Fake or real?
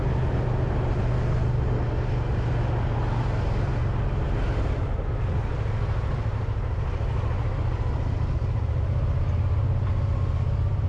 real